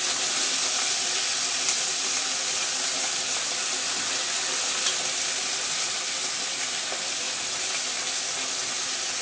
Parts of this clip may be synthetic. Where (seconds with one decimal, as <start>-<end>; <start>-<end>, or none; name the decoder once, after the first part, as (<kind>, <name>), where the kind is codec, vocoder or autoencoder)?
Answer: none